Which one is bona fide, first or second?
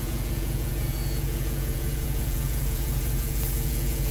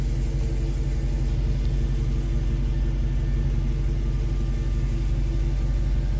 second